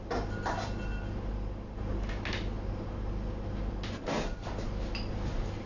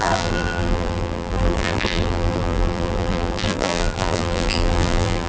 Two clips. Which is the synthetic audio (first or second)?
second